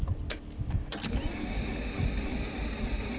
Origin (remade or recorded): recorded